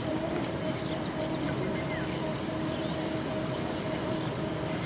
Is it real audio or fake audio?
real